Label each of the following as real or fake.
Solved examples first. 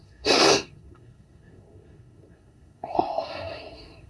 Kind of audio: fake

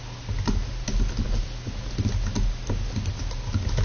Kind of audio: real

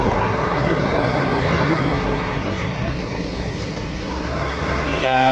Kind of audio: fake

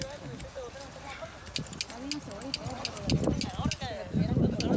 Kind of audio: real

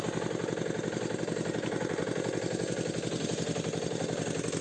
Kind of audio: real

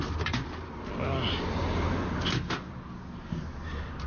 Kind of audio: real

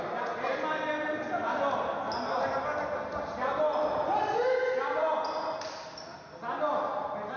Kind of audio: real